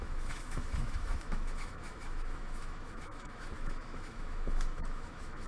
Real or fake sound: fake